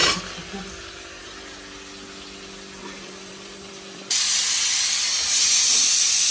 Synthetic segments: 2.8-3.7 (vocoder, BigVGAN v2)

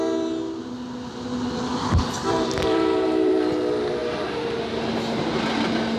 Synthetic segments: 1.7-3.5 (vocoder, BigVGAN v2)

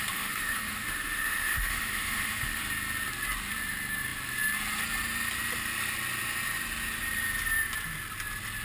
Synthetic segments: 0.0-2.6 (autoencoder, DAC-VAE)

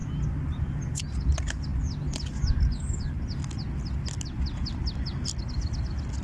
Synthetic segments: none

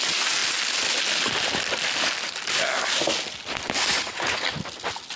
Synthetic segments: none

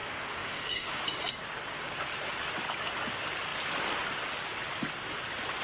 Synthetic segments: 0.0-1.0 (autoencoder, DAC-VAE)